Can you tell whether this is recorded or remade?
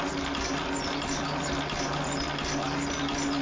recorded